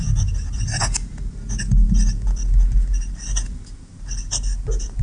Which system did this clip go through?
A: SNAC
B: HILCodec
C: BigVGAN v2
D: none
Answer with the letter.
D